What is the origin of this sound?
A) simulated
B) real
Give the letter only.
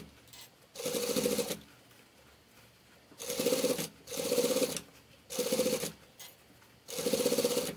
B